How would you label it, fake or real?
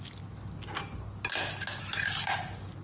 real